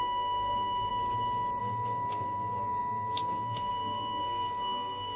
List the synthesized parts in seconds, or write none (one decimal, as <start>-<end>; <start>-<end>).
0.0-0.9; 1.6-5.2